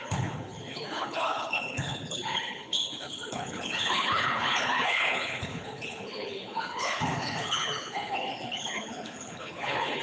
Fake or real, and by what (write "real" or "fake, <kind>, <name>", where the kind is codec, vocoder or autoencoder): fake, codec, HILCodec